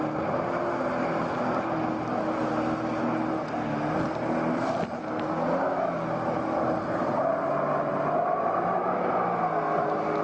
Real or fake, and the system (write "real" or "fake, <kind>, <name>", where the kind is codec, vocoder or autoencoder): real